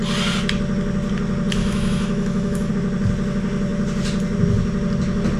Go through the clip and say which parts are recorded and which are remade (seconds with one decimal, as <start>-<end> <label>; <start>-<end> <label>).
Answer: 0.0-1.6 recorded; 1.6-2.7 remade; 2.7-5.4 recorded